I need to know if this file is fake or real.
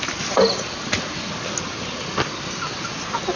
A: real